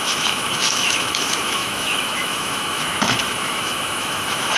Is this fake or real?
fake